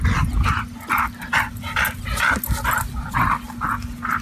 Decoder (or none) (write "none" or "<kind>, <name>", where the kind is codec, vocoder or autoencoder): none